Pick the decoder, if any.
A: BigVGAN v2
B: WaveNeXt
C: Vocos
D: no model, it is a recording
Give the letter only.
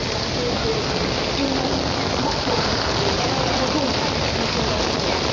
D